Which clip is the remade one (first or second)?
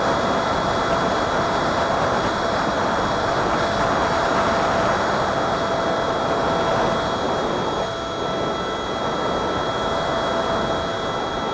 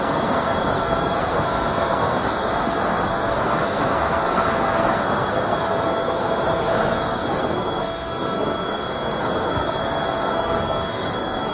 second